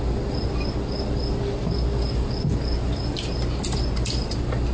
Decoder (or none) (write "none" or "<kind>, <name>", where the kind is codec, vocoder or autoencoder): none